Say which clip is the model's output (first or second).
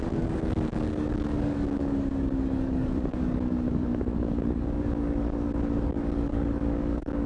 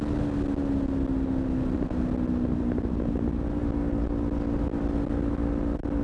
first